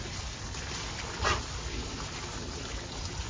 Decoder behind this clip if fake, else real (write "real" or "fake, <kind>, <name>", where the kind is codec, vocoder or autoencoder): real